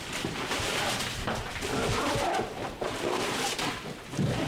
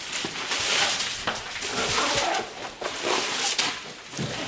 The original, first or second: second